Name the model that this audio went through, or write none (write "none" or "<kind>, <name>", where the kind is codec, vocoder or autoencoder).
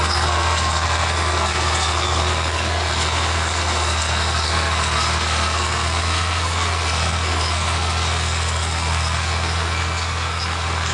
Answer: codec, SNAC